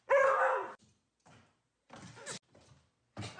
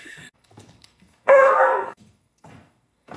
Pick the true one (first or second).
first